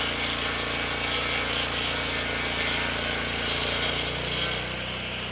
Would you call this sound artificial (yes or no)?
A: no